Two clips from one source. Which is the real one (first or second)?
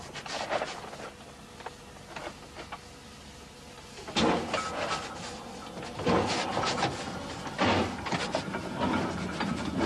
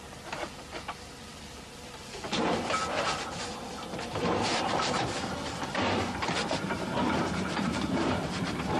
first